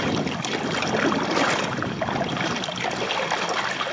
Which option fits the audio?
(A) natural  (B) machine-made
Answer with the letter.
A